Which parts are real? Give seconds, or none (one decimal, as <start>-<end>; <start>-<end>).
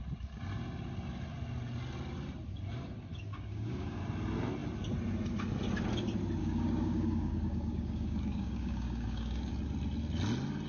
0.0-3.3; 4.0-6.4; 9.5-10.7